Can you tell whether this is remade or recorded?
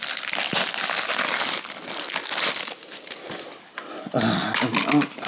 recorded